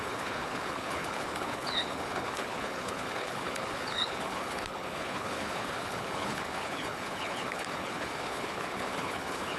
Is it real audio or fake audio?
fake